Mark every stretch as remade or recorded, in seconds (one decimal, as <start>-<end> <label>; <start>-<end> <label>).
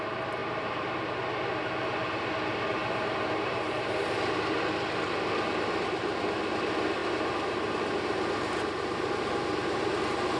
0.0-0.4 recorded; 0.4-1.2 remade; 1.2-2.8 recorded; 2.8-4.6 remade; 4.6-7.0 recorded; 7.0-9.3 remade; 9.3-10.4 recorded